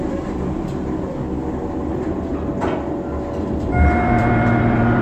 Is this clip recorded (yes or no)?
no